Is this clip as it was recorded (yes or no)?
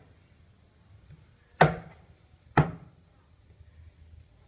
yes